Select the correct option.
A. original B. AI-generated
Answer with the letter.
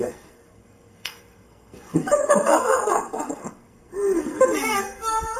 B